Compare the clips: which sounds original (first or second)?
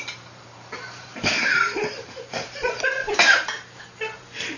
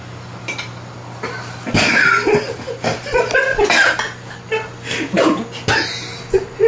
second